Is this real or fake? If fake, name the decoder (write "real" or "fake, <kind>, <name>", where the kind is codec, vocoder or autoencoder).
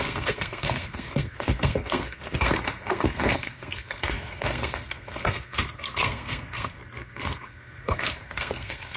fake, codec, SNAC